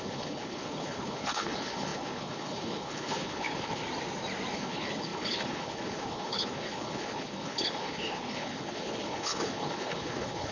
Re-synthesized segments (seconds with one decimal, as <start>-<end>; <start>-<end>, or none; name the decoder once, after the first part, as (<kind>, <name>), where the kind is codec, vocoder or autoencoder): 0.0-3.8 (codec, HILCodec); 4.5-10.5